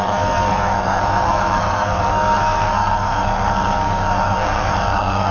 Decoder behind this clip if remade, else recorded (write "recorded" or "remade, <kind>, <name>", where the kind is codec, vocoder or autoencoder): remade, codec, SNAC